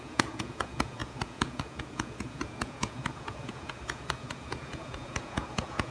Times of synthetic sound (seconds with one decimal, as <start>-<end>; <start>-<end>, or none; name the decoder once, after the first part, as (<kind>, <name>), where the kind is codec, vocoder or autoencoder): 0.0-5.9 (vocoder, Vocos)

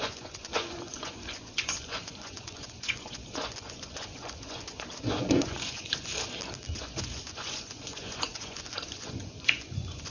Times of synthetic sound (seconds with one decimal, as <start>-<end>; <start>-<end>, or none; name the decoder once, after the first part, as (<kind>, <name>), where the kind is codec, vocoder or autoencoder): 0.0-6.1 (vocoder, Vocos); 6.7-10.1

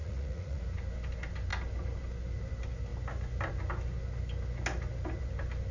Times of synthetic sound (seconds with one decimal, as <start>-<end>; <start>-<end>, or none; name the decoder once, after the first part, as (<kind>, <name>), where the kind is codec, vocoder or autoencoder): 0.0-0.6 (vocoder, Vocos)